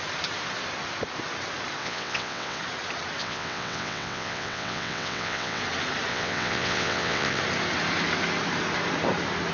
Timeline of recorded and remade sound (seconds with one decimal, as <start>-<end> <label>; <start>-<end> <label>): 0.0-1.8 recorded; 1.8-2.6 remade; 2.6-3.2 recorded; 3.2-5.6 remade; 5.6-6.1 recorded; 6.1-7.4 remade; 7.4-9.5 recorded